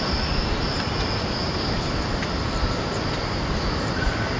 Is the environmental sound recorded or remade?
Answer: recorded